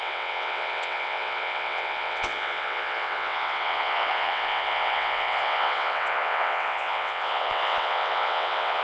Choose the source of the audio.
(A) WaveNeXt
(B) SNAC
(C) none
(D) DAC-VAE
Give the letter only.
A